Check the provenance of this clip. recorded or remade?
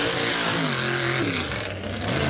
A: recorded